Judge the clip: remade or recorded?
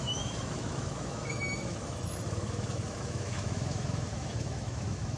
remade